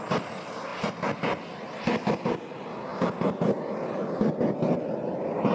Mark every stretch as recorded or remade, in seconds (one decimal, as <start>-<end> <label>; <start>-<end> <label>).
0.0-5.5 recorded